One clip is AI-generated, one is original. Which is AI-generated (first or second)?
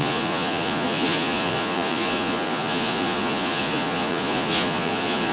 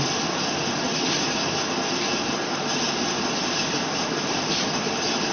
first